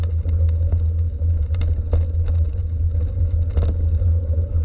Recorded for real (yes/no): yes